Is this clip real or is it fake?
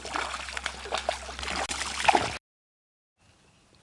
real